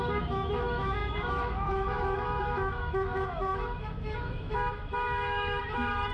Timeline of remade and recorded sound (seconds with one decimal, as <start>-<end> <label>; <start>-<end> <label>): 0.0-6.1 remade